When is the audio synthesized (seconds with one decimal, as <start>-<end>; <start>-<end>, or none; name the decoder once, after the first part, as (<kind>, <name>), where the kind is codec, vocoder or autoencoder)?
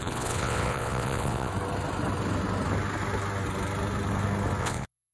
0.0-1.5 (vocoder, WaveNeXt); 4.6-5.1